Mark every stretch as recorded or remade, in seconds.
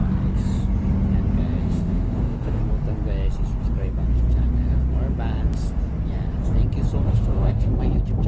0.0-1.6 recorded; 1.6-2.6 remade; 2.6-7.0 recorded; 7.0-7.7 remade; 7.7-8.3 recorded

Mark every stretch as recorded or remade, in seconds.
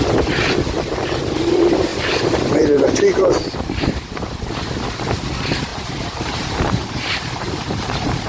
0.0-1.9 recorded; 1.9-4.4 remade; 4.4-5.7 recorded; 5.7-8.3 remade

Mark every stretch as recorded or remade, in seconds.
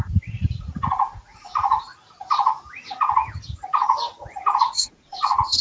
0.0-1.9 remade; 1.9-4.6 recorded; 4.6-5.6 remade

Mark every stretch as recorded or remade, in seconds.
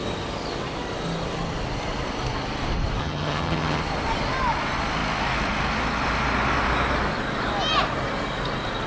0.0-3.0 recorded; 3.0-3.8 remade; 3.8-8.9 recorded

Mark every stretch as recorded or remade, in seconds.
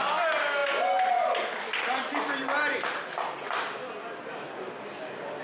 0.0-5.4 recorded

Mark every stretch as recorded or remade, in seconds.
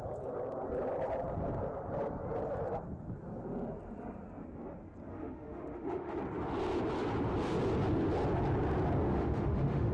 0.0-5.1 recorded; 5.1-6.2 remade; 6.2-9.1 recorded; 9.1-9.9 remade